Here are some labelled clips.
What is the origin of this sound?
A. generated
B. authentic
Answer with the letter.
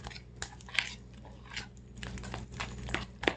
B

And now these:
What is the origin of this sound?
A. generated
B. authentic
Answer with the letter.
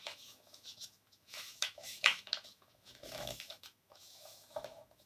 A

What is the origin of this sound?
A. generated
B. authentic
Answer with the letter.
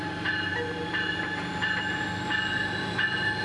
B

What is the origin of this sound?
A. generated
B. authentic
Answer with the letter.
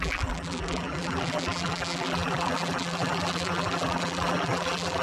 A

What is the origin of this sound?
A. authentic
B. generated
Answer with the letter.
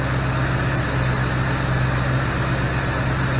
A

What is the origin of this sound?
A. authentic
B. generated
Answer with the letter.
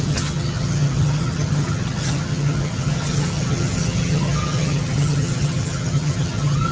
B